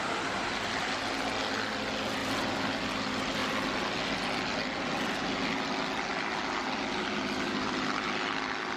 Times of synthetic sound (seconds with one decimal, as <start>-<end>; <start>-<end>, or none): none